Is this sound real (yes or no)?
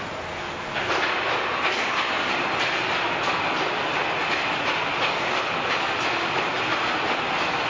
yes